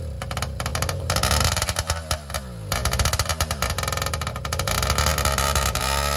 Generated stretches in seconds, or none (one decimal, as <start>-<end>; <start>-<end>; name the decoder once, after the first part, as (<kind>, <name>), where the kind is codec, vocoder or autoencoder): 0.7-1.6 (vocoder, BigVGAN v2); 5.1-5.8